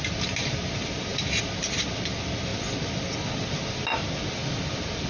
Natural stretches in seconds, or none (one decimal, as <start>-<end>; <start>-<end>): 0.0-5.1